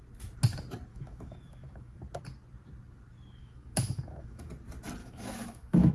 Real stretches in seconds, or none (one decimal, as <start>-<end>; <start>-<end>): 0.0-0.9; 2.0-3.4; 4.5-5.0

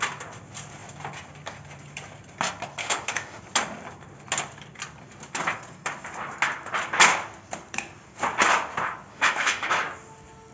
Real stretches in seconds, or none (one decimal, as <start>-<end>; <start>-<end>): 0.0-2.8; 3.4-9.1; 9.7-10.5

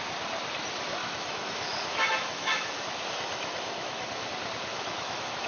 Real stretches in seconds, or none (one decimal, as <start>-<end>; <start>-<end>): 0.0-1.0; 4.3-4.7

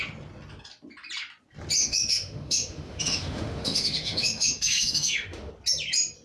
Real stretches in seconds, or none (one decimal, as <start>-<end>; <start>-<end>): 0.0-1.8; 5.5-6.2

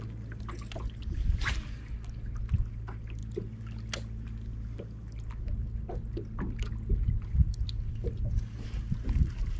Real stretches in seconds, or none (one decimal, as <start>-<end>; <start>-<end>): 0.0-9.6

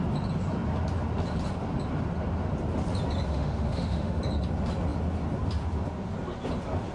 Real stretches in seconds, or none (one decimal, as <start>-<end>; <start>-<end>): 0.0-3.3; 4.2-6.9

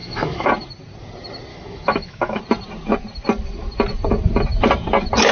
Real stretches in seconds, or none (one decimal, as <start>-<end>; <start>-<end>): 0.5-1.5; 2.4-5.3